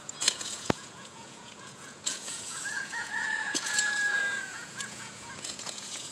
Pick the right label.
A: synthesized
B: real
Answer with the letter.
A